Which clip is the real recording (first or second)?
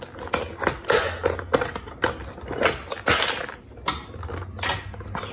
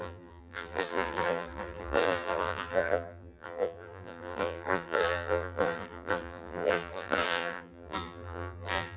first